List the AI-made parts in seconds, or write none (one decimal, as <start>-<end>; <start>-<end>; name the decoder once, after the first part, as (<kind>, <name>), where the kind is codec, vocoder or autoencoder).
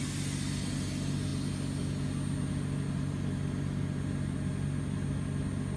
none